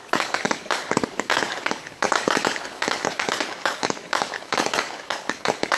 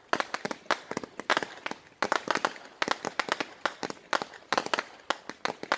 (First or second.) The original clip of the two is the second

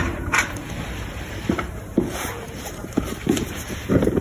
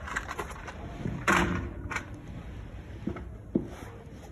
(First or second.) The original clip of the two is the second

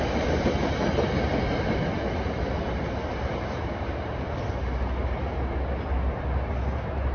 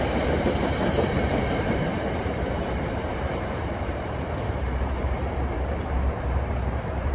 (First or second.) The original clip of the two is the first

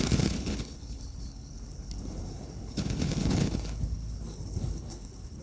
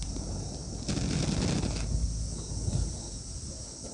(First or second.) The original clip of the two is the second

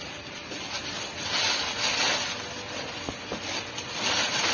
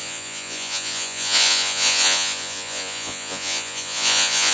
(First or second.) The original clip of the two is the first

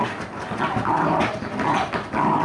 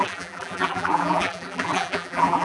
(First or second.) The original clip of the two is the first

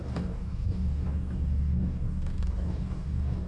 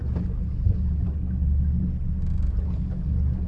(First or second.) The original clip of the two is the second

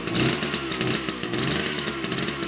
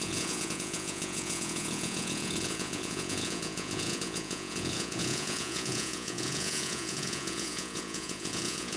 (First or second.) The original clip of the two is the first